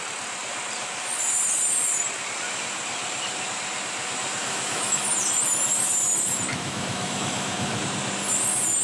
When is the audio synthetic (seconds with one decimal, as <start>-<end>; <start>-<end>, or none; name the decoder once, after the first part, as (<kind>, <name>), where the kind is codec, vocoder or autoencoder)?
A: 4.4-5.1 (autoencoder, DAC-VAE); 6.5-7.8